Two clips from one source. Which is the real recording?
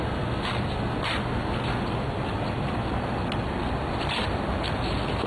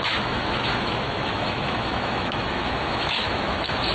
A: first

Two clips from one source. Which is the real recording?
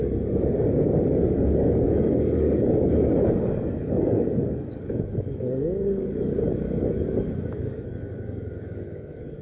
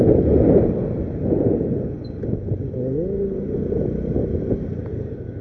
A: second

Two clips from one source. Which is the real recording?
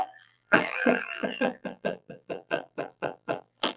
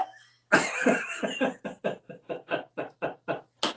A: second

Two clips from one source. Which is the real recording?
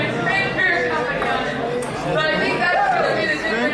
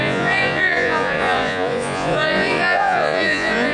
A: first